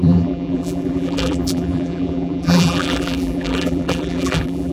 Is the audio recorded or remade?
remade